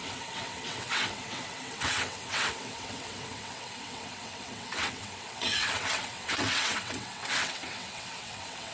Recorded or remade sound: remade